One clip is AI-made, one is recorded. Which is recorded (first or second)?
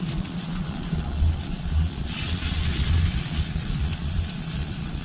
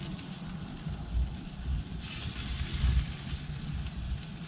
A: second